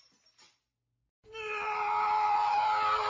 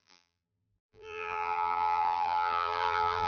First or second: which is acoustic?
first